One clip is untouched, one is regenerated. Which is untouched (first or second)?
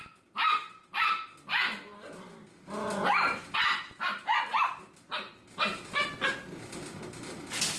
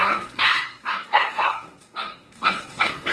first